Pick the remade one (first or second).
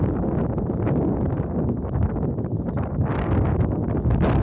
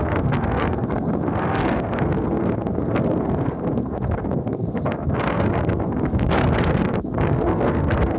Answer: second